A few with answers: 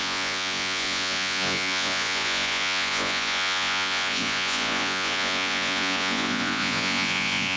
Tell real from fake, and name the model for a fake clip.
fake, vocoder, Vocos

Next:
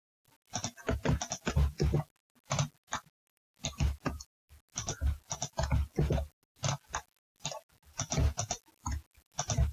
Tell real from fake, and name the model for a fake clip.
real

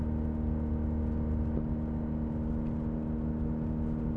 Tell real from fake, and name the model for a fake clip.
real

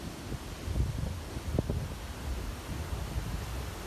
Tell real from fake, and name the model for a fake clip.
real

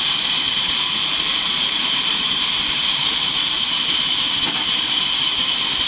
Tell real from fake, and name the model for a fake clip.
fake, vocoder, BigVGAN v2